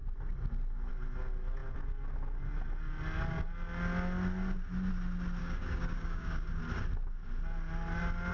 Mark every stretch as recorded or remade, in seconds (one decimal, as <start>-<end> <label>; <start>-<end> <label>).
0.0-5.4 recorded; 5.4-6.6 remade; 6.6-8.3 recorded